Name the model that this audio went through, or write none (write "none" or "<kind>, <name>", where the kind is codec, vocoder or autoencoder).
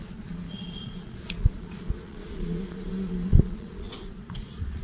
vocoder, Vocos